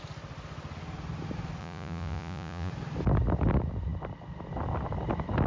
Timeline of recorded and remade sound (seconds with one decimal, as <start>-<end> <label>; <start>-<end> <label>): 0.0-1.6 recorded; 1.6-2.7 remade; 2.7-5.5 recorded